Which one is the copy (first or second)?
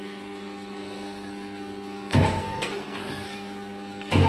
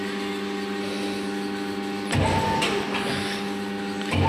first